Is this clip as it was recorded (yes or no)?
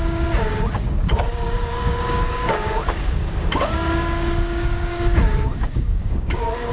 no